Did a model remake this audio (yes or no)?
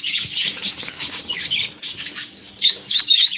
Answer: yes